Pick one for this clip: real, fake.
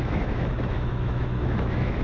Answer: fake